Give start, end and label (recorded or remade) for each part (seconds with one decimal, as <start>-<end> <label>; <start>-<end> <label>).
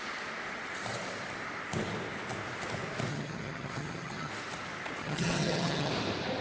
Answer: 0.0-3.1 recorded; 3.1-4.3 remade; 4.3-5.0 recorded; 5.0-5.9 remade; 5.9-6.4 recorded